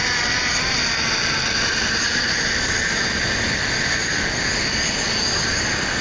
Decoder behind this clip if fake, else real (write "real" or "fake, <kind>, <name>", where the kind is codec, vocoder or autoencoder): real